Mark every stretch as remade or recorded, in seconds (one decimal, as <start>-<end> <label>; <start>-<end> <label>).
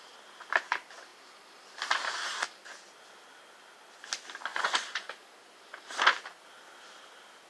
0.0-4.5 recorded; 4.5-5.1 remade; 5.1-7.5 recorded